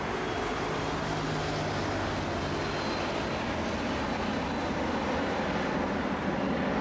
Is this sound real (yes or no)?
yes